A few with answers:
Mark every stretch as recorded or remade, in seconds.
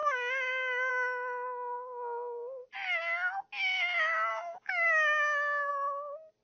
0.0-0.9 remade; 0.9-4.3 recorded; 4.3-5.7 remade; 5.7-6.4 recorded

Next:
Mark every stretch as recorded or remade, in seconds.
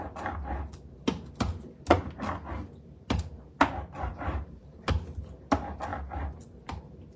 0.0-4.1 recorded; 4.1-4.9 remade; 4.9-7.2 recorded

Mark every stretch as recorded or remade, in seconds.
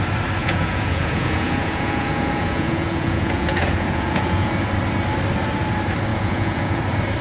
0.0-0.4 recorded; 0.4-4.5 remade; 4.5-6.1 recorded; 6.1-6.8 remade; 6.8-7.2 recorded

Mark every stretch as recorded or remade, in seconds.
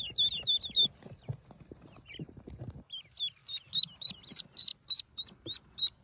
0.0-6.0 recorded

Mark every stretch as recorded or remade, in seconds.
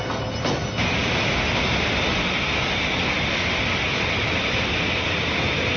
0.0-5.8 recorded